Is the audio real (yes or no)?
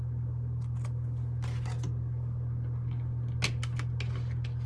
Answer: yes